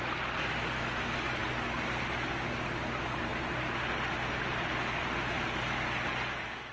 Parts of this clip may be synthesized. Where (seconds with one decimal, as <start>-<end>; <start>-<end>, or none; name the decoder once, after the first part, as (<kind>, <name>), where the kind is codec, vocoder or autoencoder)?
none